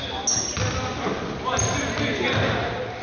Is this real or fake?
real